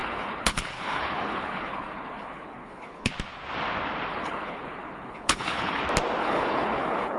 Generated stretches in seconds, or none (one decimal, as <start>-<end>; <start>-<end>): 0.0-3.1; 4.1-5.8; 6.2-7.2